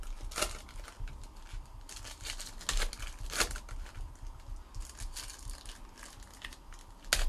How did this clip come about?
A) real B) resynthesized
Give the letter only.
A